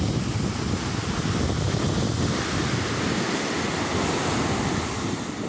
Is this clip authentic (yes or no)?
yes